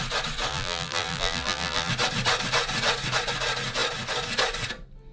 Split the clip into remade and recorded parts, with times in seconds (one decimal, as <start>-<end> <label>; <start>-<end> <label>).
0.0-0.5 recorded; 0.5-1.9 remade; 1.9-5.1 recorded